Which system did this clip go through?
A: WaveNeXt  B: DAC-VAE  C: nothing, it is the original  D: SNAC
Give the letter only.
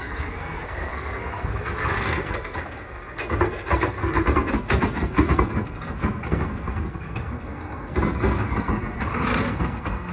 D